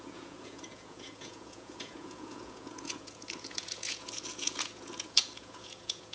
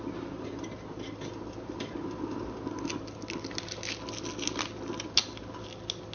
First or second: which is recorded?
second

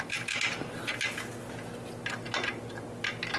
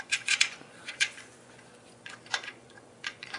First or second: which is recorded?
first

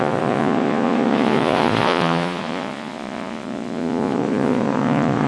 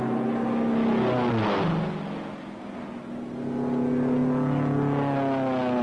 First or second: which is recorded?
second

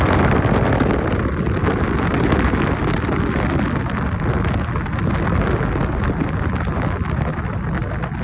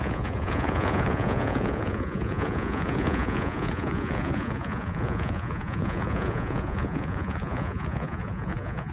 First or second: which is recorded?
first